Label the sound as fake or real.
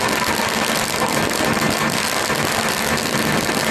real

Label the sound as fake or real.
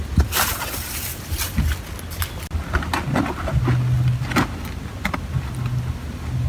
real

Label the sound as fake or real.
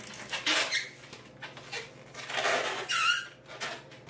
real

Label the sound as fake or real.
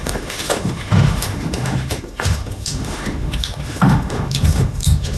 fake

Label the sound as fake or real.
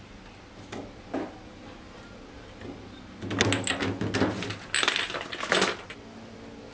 real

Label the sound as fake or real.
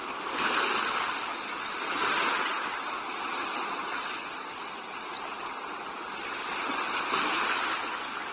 real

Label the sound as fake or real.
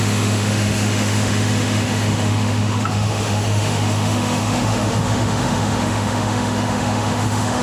fake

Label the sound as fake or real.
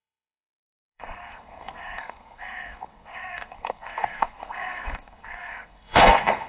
fake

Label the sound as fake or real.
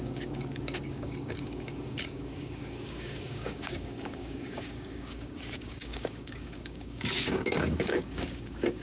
fake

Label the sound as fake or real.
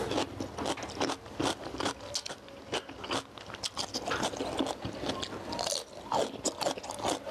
real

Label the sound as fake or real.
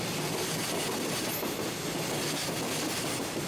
real